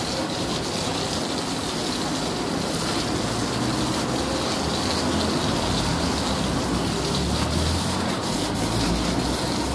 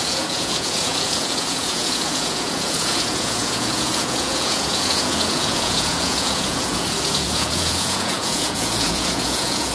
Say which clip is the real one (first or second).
first